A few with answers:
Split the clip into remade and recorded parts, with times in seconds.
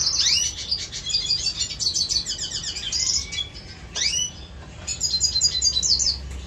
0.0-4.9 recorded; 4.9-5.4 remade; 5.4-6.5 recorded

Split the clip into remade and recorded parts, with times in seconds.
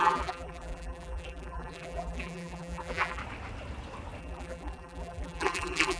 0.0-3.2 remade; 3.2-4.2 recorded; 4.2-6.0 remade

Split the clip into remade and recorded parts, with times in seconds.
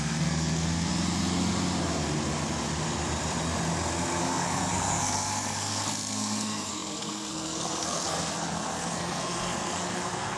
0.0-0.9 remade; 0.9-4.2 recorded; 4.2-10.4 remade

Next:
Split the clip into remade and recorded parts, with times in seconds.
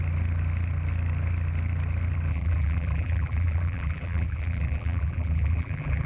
0.0-2.3 recorded; 2.3-6.1 remade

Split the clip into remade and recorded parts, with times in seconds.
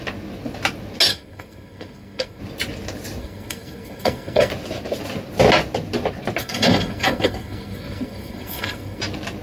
0.0-1.1 recorded; 1.1-2.4 remade; 2.4-3.2 recorded; 3.2-4.5 remade; 4.5-6.4 recorded; 6.4-9.0 remade; 9.0-9.4 recorded